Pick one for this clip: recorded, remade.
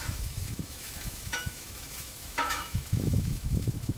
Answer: remade